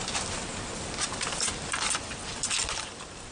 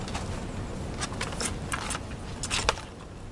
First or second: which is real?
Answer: second